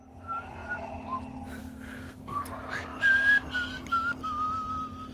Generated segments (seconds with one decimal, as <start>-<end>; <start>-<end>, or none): 1.6-2.4